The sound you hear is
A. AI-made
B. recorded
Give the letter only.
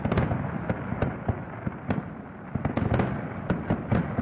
B